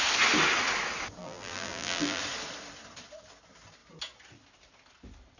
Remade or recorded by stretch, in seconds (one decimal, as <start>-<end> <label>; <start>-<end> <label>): 0.0-1.2 recorded; 1.2-2.2 remade; 2.2-5.4 recorded